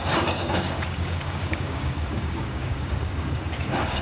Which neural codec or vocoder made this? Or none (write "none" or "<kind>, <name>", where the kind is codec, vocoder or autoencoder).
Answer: codec, DAC